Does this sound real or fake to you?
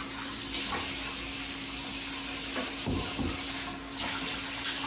real